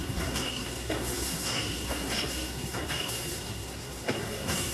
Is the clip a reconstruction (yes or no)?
yes